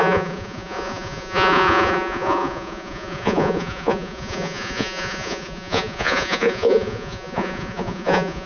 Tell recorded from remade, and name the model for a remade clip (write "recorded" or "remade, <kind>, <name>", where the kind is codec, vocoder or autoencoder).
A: remade, vocoder, Vocos